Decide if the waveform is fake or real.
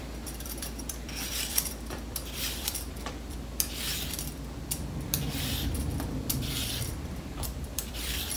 fake